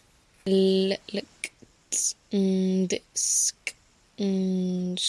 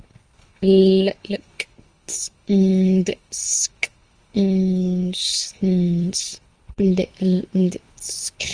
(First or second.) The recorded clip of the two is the first